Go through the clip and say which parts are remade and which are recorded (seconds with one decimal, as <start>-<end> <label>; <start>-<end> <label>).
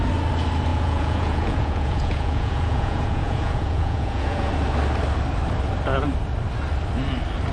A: 0.0-0.7 recorded; 0.7-4.5 remade; 4.5-7.5 recorded